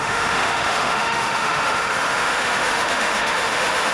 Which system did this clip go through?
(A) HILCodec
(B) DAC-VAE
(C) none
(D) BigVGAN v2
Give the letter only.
B